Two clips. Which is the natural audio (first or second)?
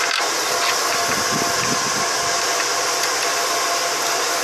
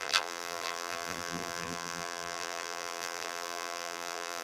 first